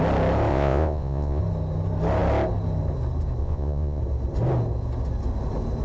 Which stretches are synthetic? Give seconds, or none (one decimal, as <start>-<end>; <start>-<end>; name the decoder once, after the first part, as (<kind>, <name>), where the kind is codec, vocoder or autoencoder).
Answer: 0.5-1.4 (vocoder, Vocos); 3.4-4.0